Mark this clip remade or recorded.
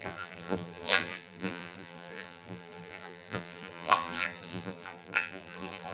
remade